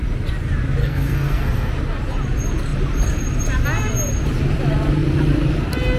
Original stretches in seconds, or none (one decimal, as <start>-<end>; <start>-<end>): 0.0-0.8; 1.7-6.0